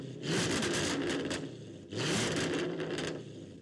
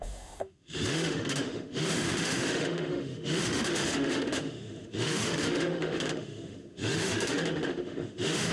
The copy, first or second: second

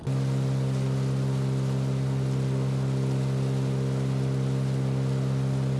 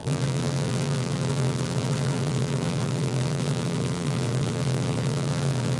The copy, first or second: second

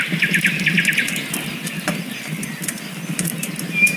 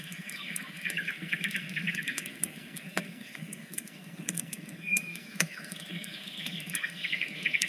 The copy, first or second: second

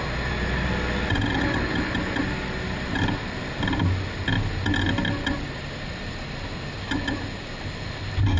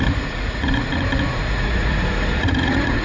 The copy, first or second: second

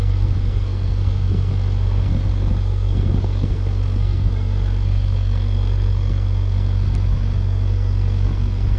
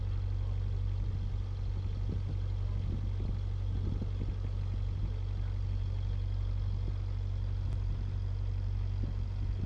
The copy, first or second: first